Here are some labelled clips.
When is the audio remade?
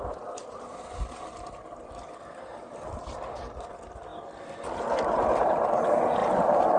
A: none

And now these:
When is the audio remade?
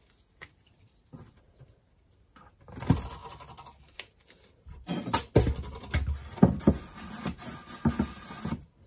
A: none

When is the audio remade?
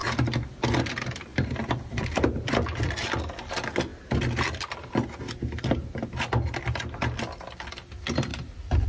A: 1.3-2.3 (vocoder, BigVGAN v2); 8.3-8.9